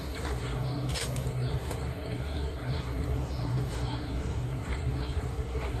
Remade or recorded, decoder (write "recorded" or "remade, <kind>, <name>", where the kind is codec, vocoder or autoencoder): remade, codec, SNAC